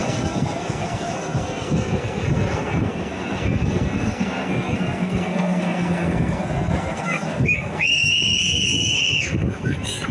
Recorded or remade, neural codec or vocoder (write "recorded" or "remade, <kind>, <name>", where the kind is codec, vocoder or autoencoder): remade, codec, SNAC